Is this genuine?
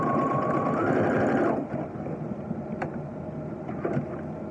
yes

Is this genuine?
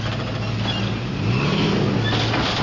yes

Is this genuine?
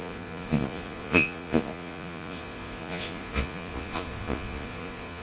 no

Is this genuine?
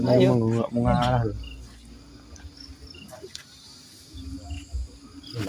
yes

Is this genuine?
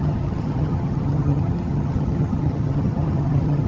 no